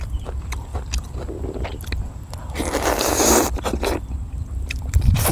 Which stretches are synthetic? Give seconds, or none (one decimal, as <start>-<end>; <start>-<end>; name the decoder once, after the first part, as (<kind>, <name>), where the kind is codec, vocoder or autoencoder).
none